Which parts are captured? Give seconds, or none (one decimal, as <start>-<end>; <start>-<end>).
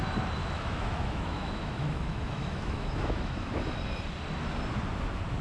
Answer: 0.0-0.4; 3.6-5.4